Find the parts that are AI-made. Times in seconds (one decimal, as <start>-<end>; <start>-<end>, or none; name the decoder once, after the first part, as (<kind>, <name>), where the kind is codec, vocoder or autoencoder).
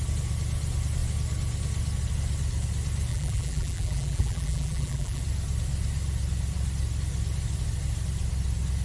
3.1-5.2 (vocoder, BigVGAN v2)